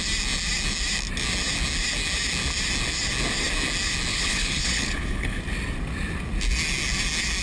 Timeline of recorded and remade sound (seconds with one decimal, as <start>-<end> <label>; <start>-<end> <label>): 0.0-4.1 recorded; 4.1-5.4 remade; 5.4-7.4 recorded